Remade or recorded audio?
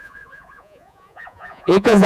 remade